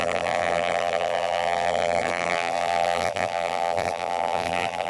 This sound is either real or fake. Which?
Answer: fake